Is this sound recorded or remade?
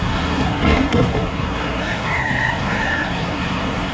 remade